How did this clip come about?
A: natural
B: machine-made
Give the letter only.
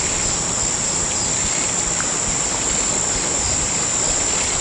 A